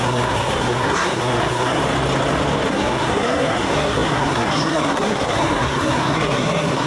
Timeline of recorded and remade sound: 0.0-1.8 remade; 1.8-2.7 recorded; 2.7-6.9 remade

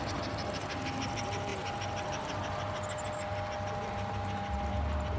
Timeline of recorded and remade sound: 0.0-5.2 recorded